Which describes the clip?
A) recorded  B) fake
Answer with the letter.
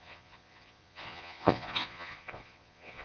B